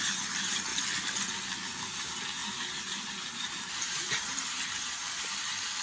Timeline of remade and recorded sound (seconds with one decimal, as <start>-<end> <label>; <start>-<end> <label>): 0.0-5.8 remade